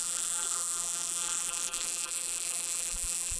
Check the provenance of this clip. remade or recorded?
remade